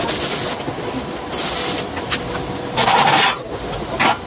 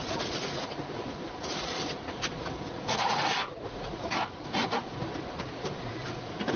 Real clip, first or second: first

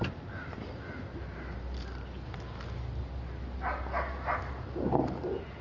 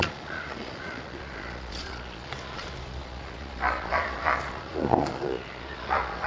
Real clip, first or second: first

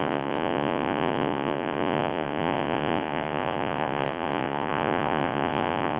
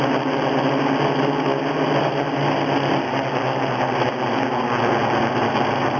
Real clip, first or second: second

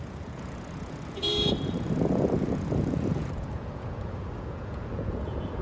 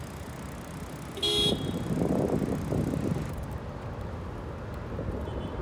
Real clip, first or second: second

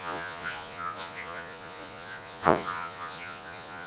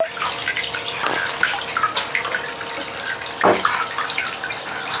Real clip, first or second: second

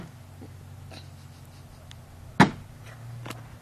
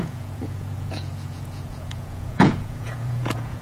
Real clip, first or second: first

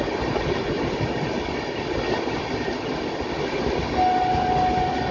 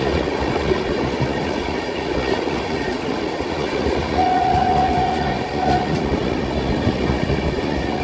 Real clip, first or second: first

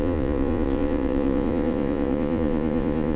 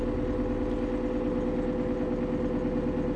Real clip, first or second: second